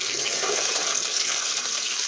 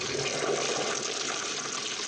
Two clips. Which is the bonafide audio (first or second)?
second